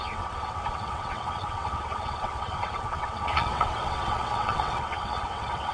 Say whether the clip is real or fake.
fake